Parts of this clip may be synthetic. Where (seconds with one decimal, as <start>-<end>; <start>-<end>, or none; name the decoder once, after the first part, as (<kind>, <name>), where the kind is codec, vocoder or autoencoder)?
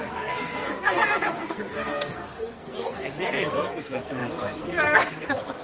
0.0-5.6 (codec, SNAC)